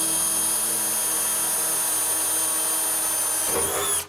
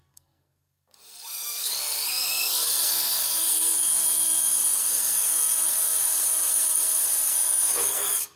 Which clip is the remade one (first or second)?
second